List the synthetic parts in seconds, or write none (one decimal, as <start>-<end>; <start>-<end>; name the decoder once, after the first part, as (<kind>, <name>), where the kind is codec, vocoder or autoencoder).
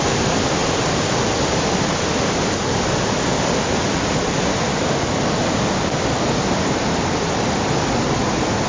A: none